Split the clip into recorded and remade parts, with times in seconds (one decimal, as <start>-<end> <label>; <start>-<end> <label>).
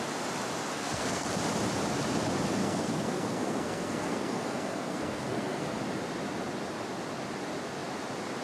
0.0-0.7 recorded; 0.7-1.3 remade; 1.3-2.6 recorded; 2.6-5.8 remade; 5.8-8.4 recorded